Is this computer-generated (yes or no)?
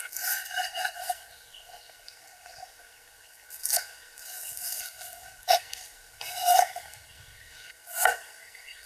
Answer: yes